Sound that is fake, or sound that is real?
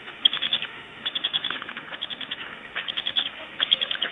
fake